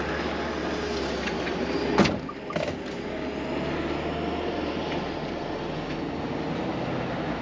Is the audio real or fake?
real